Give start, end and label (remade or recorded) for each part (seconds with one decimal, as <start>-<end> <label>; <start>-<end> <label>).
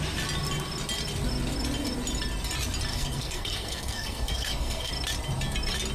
0.0-2.9 recorded; 2.9-4.9 remade; 4.9-5.9 recorded